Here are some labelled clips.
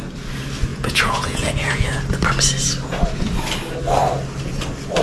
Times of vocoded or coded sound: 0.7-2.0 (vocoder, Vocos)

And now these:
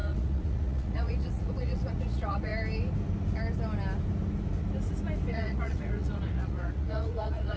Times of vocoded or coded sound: 0.0-2.5 (vocoder, Vocos); 5.3-7.6

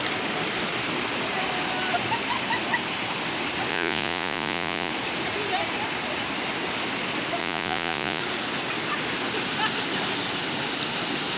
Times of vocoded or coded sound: 3.7-4.9 (vocoder, Vocos); 7.4-8.2

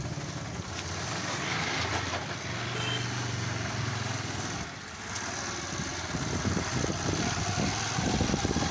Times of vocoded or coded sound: none

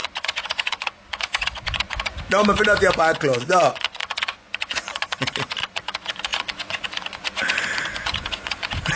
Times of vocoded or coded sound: 0.0-8.9 (vocoder, Vocos)

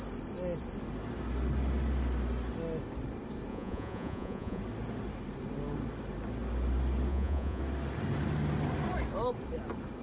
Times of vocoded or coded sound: 3.5-4.6 (vocoder, Vocos); 7.1-7.6